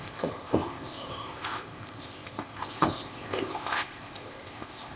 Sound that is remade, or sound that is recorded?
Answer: remade